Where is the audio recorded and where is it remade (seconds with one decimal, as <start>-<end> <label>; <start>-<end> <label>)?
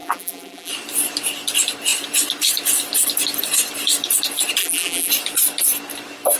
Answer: 0.0-0.7 remade; 0.7-4.6 recorded; 4.6-5.1 remade; 5.1-6.4 recorded